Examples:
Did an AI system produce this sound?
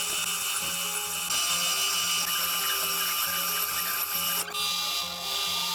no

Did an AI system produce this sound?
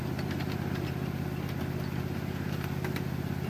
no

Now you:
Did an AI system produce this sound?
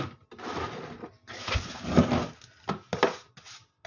no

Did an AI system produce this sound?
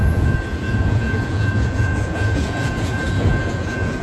yes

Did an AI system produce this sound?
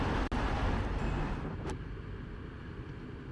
no